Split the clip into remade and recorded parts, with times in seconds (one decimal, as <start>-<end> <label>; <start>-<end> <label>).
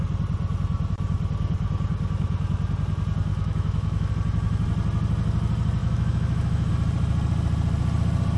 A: 0.0-3.3 recorded; 3.3-4.1 remade; 4.1-5.8 recorded; 5.8-6.7 remade; 6.7-8.4 recorded